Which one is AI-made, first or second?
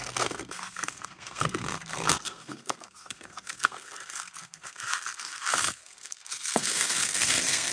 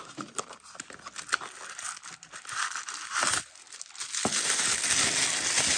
first